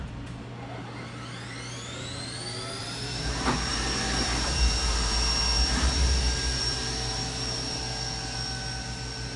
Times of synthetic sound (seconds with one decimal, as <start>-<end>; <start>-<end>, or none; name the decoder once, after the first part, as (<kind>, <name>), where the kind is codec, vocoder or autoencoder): 2.8-7.8 (vocoder, BigVGAN v2)